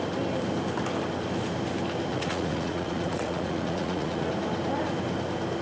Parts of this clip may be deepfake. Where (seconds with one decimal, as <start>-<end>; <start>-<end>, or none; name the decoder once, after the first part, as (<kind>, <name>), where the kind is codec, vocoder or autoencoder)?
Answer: 2.1-4.3 (vocoder, Vocos)